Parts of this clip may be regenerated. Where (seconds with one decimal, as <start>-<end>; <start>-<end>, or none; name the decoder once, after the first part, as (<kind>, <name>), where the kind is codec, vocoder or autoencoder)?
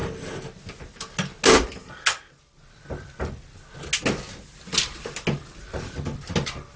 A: none